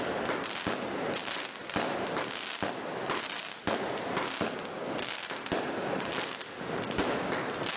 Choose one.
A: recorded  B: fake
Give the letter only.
A